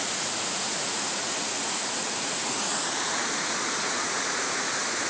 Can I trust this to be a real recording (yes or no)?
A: no